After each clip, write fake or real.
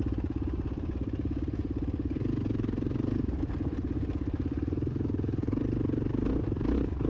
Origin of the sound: real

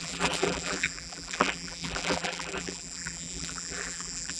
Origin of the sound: fake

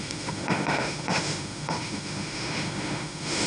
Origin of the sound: fake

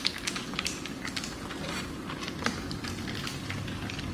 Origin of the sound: fake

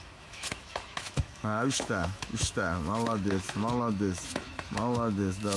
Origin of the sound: fake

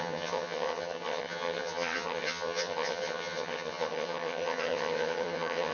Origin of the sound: fake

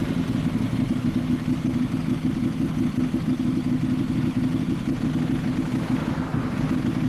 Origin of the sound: real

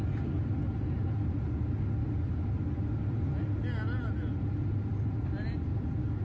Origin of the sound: real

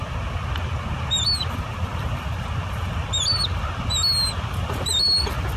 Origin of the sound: real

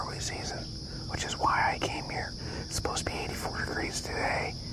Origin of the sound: real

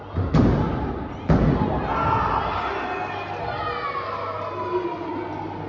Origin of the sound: real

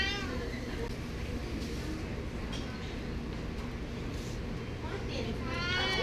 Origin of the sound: real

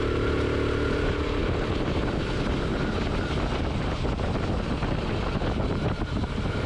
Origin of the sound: real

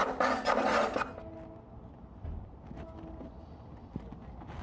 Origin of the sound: real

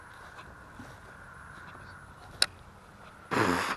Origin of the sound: real